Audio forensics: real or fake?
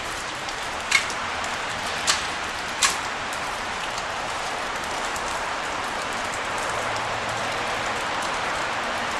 fake